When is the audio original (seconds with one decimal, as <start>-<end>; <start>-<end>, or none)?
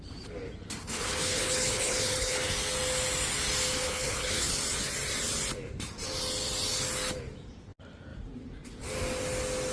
0.0-0.8; 2.5-3.8; 4.5-9.7